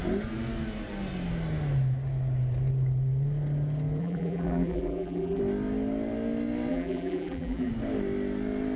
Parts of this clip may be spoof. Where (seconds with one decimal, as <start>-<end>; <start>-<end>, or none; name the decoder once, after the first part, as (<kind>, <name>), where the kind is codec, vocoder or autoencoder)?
4.0-5.4 (vocoder, BigVGAN v2); 6.7-7.7